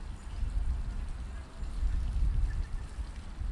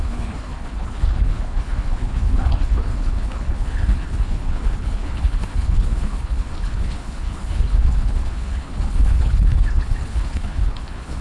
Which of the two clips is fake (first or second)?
second